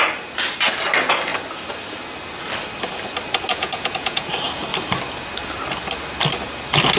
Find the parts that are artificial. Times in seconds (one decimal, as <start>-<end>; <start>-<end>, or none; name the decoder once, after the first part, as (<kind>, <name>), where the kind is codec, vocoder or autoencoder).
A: 3.5-4.3 (vocoder, Vocos)

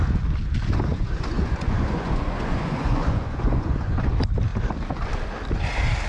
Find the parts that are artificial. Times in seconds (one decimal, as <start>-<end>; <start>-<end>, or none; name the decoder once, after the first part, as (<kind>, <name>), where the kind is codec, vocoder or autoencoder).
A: 0.9-4.1 (vocoder, Vocos)

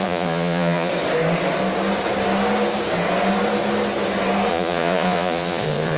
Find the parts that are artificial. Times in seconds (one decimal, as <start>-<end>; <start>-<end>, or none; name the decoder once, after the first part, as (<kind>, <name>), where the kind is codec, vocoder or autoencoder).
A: 0.0-0.9 (vocoder, Vocos); 4.5-6.0

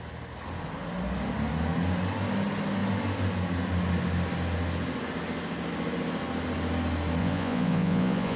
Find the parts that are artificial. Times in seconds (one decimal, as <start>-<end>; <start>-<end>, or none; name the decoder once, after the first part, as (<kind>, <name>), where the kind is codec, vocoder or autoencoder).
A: 7.2-8.4 (vocoder, Vocos)

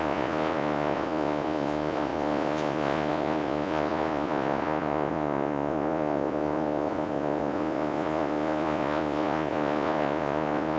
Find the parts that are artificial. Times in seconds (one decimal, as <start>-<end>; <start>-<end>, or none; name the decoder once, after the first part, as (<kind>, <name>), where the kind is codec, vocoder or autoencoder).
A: 0.0-10.8 (vocoder, Vocos)